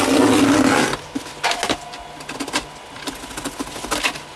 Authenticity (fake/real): real